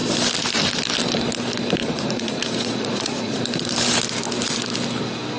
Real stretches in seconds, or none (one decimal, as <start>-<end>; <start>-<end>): 0.0-1.8; 3.4-5.4